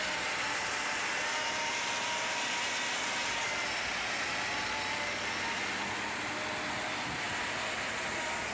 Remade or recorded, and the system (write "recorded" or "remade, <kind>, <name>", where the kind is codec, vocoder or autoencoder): recorded